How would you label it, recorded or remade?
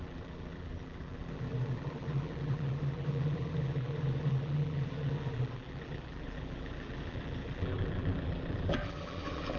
remade